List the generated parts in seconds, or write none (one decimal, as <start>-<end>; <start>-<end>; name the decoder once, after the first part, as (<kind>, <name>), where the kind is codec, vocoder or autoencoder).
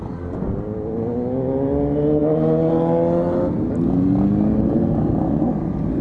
none